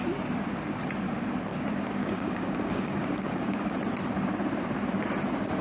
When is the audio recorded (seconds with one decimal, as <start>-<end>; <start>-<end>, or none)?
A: 0.0-1.5; 3.7-5.6